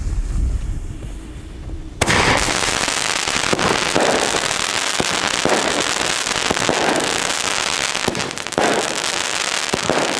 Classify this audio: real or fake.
real